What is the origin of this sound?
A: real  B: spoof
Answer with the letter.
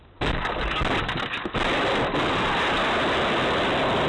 A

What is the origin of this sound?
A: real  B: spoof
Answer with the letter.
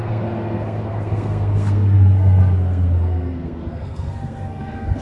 B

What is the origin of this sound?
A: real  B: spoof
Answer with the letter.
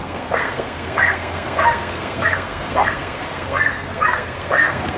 B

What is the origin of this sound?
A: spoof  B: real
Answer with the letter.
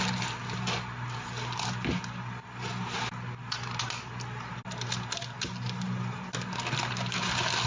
B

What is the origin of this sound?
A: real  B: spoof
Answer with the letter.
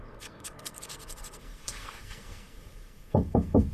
B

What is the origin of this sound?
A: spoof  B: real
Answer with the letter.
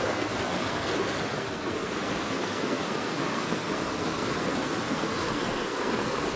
A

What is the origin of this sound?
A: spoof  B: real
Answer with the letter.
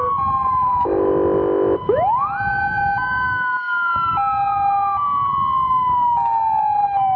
B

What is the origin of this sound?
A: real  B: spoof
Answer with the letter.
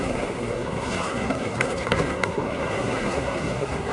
B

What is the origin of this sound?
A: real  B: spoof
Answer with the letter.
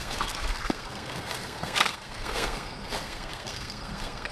B